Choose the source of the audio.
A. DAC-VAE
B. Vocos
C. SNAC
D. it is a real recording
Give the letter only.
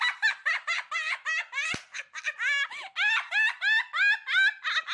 D